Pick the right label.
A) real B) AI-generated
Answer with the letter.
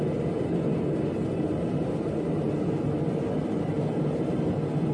A